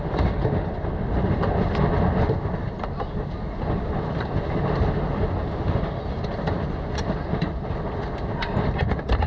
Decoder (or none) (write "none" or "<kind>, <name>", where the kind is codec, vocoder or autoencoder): none